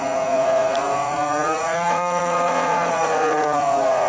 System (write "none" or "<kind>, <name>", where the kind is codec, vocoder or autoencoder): vocoder, Vocos